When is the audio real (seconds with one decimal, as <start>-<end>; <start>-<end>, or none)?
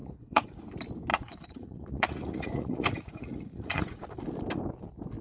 0.6-1.1; 4.2-5.2